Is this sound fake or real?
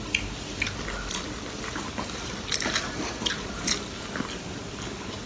real